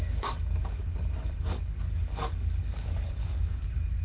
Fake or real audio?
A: fake